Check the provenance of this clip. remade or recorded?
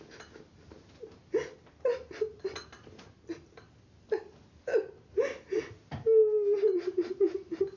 recorded